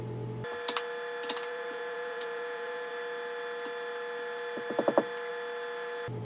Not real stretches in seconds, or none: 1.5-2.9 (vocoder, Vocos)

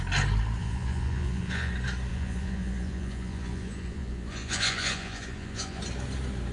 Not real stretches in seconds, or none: 0.6-1.7 (vocoder, Vocos); 2.1-5.8

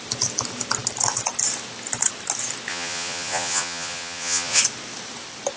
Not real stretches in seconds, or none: 2.7-4.6 (vocoder, Vocos)

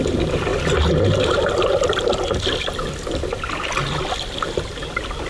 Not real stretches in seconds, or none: none

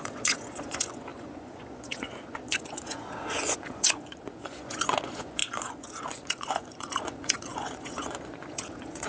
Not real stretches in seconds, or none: 0.0-9.1 (vocoder, Vocos)

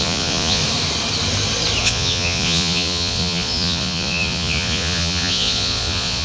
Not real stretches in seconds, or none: 0.0-0.6 (vocoder, Vocos); 1.8-6.2

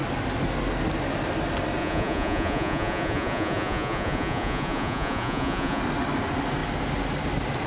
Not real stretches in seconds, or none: 1.8-5.8 (vocoder, Vocos)